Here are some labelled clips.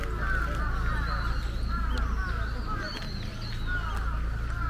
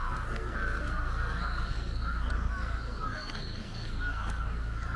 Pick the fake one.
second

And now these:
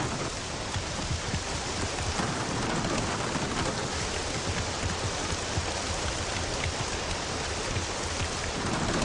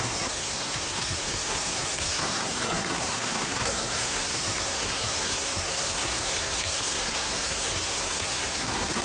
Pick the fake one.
second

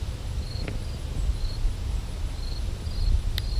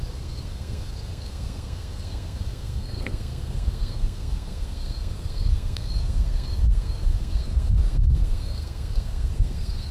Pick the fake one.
second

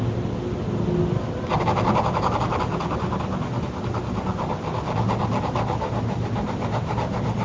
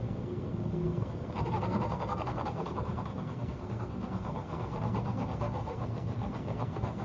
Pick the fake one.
second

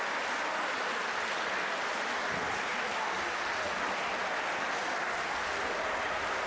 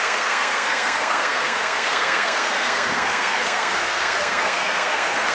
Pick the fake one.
second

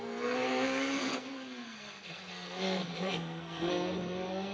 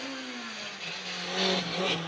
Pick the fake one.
first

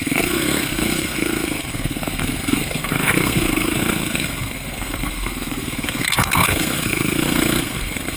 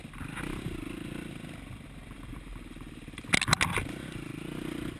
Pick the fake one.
first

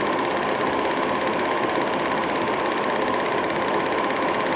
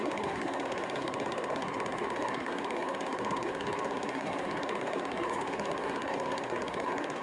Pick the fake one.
second